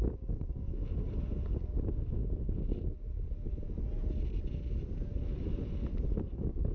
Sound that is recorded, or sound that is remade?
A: recorded